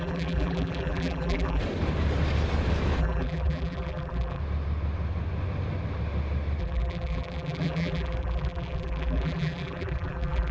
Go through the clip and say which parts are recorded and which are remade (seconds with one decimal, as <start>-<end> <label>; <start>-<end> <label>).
0.0-1.6 remade; 1.6-3.0 recorded; 3.0-4.4 remade; 4.4-6.6 recorded; 6.6-10.5 remade